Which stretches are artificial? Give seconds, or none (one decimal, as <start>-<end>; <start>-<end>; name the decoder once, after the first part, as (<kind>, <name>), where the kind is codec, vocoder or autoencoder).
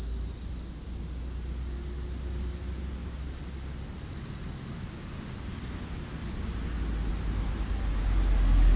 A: none